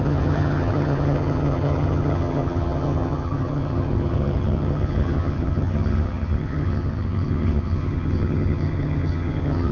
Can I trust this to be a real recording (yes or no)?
no